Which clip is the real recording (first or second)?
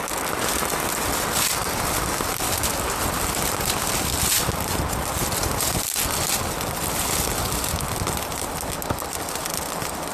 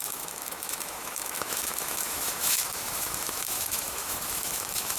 first